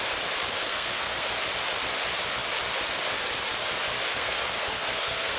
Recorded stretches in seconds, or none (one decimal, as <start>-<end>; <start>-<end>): 0.0-0.6; 1.4-4.1